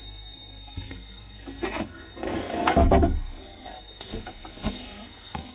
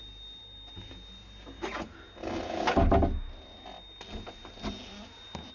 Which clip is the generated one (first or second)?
first